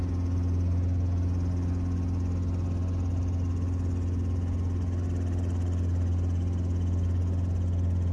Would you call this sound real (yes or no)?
yes